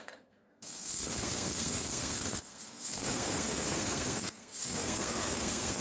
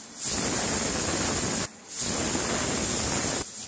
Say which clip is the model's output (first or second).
first